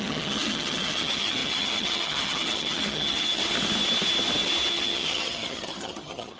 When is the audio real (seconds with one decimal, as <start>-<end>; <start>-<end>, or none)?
3.4-4.7